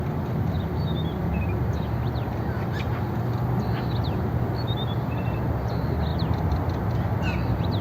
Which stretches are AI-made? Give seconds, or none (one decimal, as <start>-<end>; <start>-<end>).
none